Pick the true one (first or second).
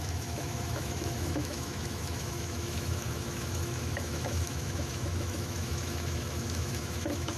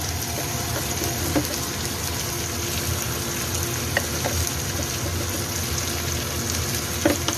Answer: second